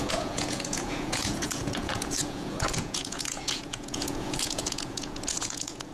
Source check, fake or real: fake